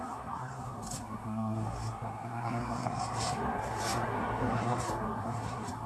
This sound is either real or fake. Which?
fake